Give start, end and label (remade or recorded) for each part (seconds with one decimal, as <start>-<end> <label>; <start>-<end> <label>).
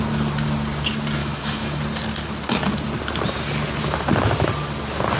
0.0-1.2 recorded; 1.2-1.8 remade; 1.8-5.2 recorded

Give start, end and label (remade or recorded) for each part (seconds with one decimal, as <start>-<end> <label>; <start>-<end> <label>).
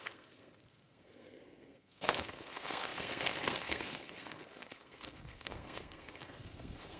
0.0-7.0 remade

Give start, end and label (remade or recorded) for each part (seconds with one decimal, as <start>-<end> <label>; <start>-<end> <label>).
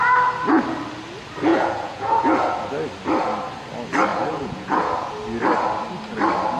0.0-1.5 recorded; 1.5-2.1 remade; 2.1-4.1 recorded; 4.1-5.1 remade; 5.1-6.6 recorded